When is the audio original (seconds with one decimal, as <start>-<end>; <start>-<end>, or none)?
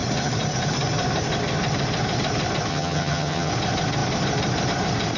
0.0-2.7; 3.5-5.2